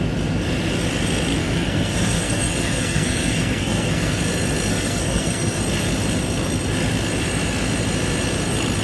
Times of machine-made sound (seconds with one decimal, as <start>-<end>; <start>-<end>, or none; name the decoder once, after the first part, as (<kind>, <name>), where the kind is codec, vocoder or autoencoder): 1.4-4.2 (codec, SNAC); 4.7-5.6